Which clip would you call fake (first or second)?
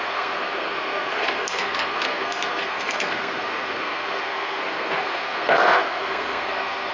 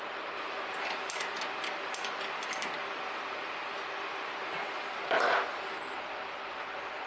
first